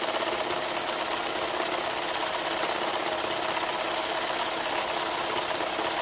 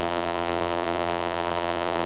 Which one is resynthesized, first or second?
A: second